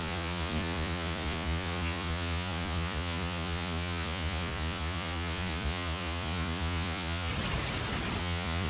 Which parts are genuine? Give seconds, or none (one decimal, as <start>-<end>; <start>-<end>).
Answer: 7.3-8.2